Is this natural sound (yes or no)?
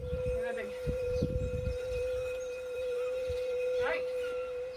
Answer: no